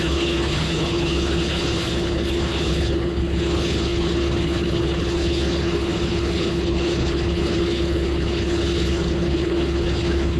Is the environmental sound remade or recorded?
remade